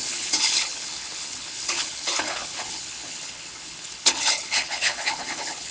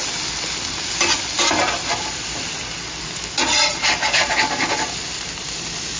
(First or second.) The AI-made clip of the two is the first